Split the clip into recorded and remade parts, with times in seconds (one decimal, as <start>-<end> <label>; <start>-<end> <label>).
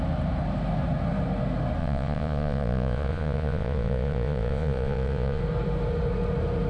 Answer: 0.0-1.8 recorded; 1.8-5.4 remade; 5.4-6.7 recorded